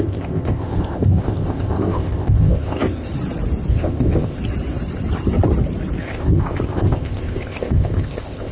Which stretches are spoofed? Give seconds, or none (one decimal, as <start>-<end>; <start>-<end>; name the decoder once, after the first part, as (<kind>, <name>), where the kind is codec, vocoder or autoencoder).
0.0-3.1 (codec, ZipCodec); 3.7-4.4; 6.0-8.5

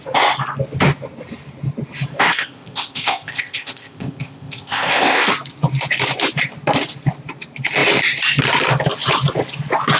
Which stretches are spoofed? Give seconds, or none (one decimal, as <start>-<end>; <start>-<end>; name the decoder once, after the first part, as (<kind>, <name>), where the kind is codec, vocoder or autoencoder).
2.1-5.3 (codec, ZipCodec)

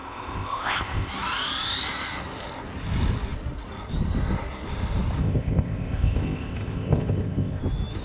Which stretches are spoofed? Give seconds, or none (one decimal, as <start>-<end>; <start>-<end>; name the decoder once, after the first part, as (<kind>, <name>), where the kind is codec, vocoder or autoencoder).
0.0-1.1 (codec, ZipCodec); 5.2-7.6

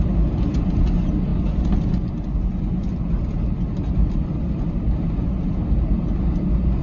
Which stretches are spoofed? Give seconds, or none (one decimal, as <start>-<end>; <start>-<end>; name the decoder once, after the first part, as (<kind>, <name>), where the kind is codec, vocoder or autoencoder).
none

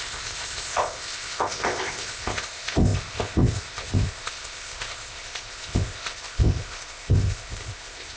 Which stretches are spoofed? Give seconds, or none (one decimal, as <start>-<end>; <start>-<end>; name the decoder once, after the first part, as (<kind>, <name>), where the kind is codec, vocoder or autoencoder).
0.0-8.2 (codec, ZipCodec)

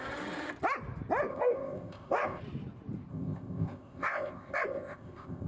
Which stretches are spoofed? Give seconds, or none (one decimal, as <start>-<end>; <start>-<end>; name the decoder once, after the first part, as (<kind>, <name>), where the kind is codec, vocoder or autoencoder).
1.3-2.4 (codec, ZipCodec); 3.1-5.5

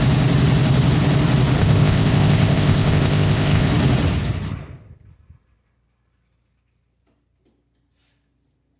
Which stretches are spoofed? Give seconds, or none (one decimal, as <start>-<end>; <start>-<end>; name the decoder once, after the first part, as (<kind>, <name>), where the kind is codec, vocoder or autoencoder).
1.6-3.7 (codec, ZipCodec)

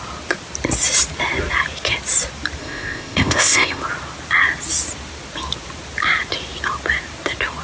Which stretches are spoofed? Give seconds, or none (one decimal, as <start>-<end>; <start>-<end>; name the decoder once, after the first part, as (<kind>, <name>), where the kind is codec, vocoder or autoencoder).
2.6-3.8 (codec, ZipCodec)